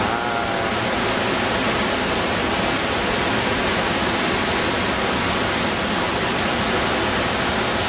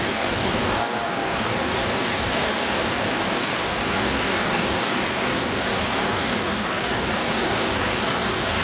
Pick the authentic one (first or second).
first